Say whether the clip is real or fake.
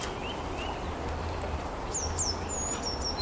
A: real